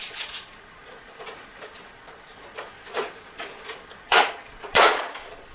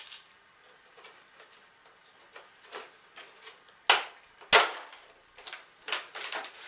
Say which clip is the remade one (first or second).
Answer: first